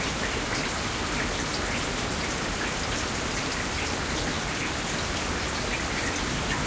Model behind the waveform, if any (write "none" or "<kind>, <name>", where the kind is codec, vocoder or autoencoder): none